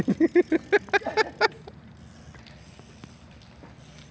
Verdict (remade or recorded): recorded